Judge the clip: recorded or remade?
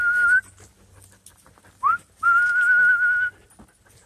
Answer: recorded